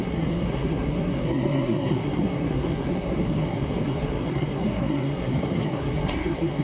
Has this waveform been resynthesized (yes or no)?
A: yes